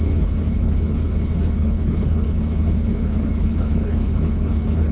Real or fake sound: fake